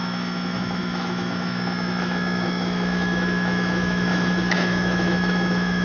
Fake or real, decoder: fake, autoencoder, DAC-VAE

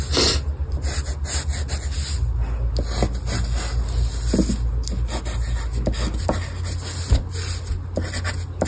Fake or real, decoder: real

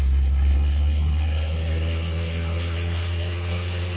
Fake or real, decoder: fake, codec, SNAC